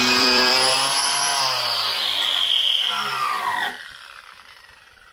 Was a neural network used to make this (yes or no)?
yes